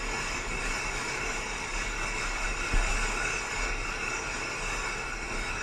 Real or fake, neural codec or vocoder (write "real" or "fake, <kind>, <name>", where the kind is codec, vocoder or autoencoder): fake, codec, DAC